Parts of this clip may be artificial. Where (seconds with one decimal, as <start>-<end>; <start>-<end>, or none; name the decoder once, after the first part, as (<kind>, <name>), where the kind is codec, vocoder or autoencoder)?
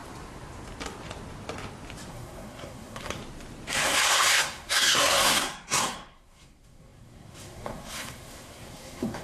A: 2.1-3.2 (codec, SNAC); 3.7-9.2